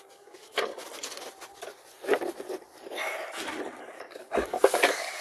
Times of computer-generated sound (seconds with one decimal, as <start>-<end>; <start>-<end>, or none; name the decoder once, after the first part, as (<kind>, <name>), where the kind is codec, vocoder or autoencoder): 0.0-0.7 (codec, DAC); 3.8-5.2